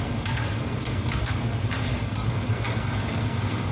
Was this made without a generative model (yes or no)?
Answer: no